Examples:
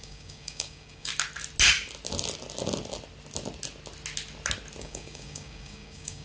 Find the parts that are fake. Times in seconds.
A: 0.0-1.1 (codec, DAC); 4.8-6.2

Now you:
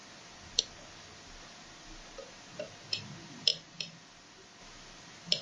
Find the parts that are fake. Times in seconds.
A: none

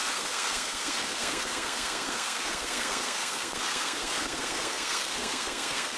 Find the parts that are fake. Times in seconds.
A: 0.0-6.0 (codec, SNAC)

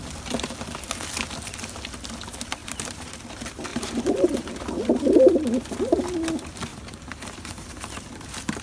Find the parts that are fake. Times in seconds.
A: 2.6-3.1 (vocoder, BigVGAN v2); 3.7-4.3; 6.7-7.7

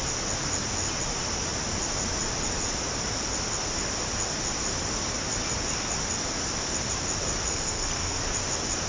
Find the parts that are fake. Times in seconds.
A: 7.5-8.2 (codec, SNAC)

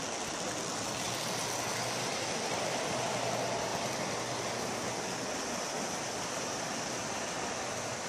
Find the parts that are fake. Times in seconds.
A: none

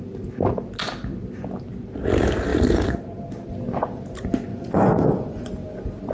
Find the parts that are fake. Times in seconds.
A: 4.5-5.5 (vocoder, Vocos)